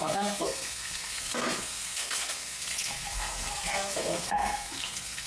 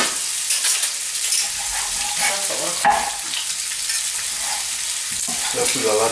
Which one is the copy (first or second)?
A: first